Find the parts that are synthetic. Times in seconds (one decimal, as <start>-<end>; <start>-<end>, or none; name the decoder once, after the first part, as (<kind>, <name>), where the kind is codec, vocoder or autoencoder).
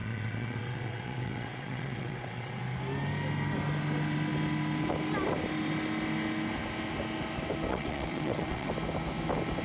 0.0-2.6 (vocoder, WaveNeXt); 7.7-8.7